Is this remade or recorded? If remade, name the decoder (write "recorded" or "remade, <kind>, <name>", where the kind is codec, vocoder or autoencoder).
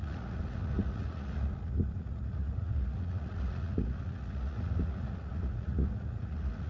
remade, vocoder, Vocos